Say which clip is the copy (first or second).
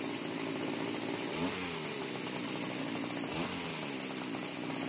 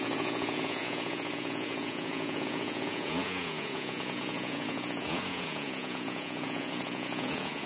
second